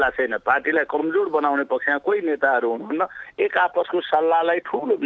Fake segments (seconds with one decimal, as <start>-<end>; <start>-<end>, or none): 1.0-3.1